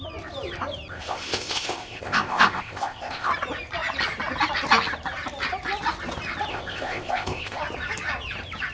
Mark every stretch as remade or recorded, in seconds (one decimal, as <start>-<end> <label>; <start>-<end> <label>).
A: 0.0-0.9 recorded; 0.9-3.3 remade; 3.3-6.5 recorded; 6.5-7.6 remade; 7.6-8.7 recorded